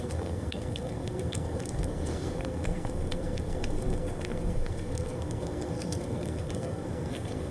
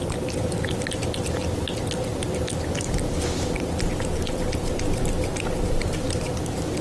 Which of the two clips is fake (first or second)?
first